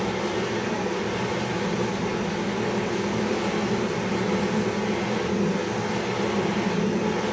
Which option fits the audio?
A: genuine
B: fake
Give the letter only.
A